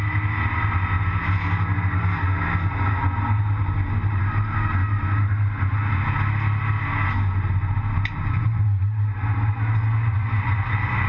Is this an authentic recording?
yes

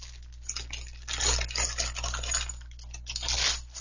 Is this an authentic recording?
yes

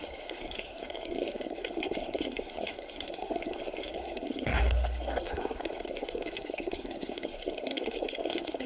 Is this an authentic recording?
no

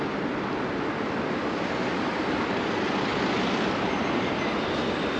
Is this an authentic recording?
yes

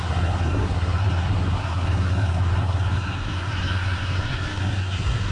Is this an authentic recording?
no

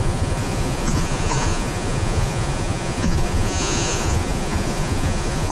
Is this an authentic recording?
no